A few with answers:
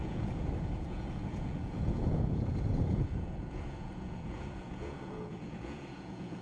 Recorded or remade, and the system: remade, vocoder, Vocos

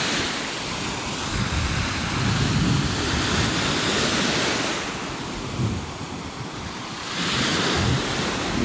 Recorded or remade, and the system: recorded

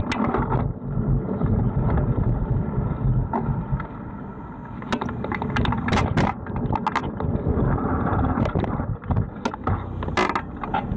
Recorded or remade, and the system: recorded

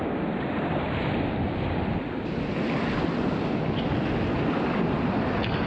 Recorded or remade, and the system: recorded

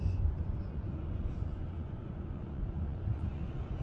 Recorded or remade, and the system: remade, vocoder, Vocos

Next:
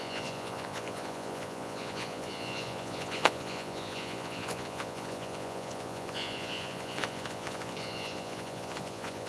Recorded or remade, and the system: remade, vocoder, Vocos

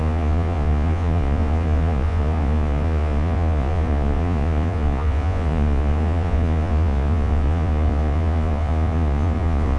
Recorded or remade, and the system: remade, vocoder, Vocos